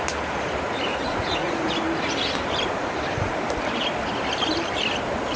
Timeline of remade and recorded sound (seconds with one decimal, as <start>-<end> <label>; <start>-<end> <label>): 0.0-0.9 recorded; 0.9-1.7 remade; 1.7-5.4 recorded